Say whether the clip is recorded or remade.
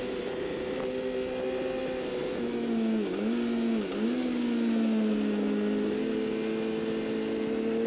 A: recorded